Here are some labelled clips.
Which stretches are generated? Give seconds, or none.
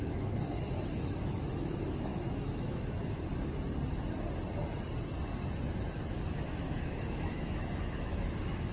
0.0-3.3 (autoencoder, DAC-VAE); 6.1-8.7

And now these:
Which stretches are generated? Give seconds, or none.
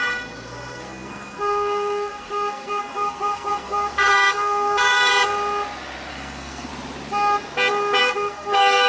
0.0-5.1 (codec, SNAC); 6.1-6.7; 8.0-8.9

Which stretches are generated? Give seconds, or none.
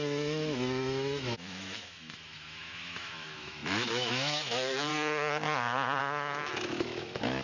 0.0-4.9 (autoencoder, DAC-VAE); 6.0-7.4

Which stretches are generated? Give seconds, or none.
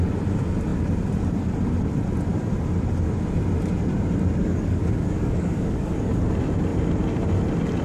4.4-6.2 (codec, DAC)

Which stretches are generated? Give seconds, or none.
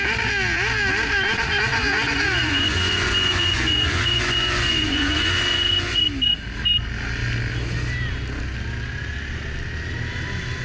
1.7-6.0 (vocoder, Vocos)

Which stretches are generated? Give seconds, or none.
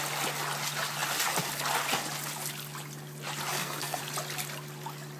3.5-4.0 (codec, SNAC)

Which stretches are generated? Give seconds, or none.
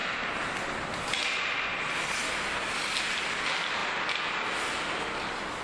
none